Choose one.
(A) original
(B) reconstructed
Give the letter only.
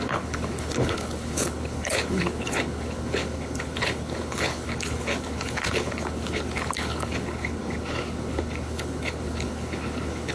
B